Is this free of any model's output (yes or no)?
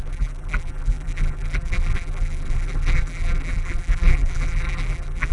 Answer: no